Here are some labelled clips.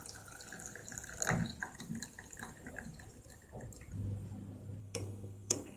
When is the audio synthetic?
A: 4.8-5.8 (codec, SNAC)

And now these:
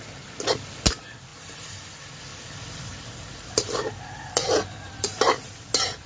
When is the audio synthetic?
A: 1.3-1.8 (vocoder, BigVGAN v2); 2.3-5.5

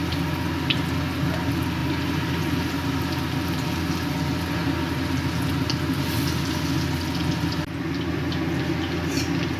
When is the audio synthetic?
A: 1.8-2.4 (vocoder, BigVGAN v2)

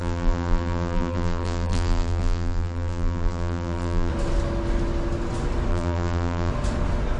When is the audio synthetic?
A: 0.0-4.1 (vocoder, BigVGAN v2); 5.7-6.5